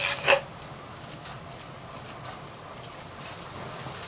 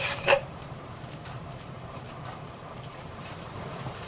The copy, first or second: second